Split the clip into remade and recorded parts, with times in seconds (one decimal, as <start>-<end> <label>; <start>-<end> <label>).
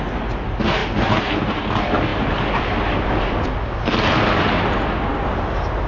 0.0-5.9 recorded